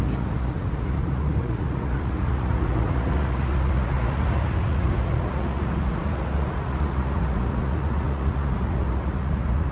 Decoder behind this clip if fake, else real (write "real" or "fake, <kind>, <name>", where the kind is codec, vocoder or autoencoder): fake, vocoder, Vocos